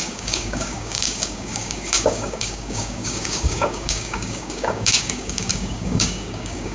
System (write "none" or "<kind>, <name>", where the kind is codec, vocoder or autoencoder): codec, DAC